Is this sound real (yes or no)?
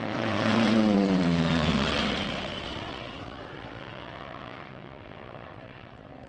no